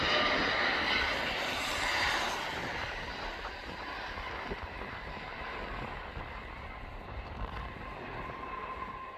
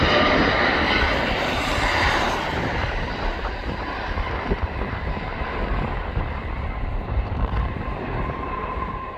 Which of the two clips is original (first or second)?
first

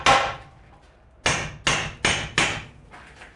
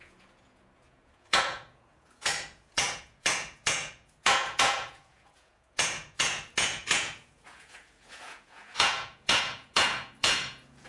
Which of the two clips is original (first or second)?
first